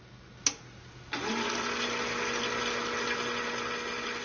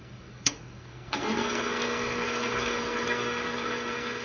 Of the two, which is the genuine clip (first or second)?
first